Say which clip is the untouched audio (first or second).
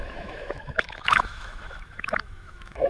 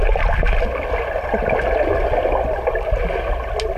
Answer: second